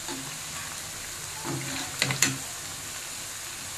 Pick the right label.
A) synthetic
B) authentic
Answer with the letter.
B